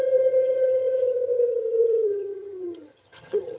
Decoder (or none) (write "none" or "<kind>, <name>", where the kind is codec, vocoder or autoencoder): vocoder, HiFi-GAN